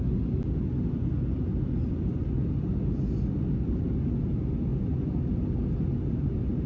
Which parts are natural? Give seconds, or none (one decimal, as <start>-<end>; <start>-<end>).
0.0-6.7